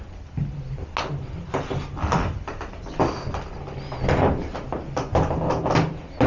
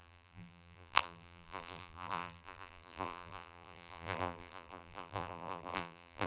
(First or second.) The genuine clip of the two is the first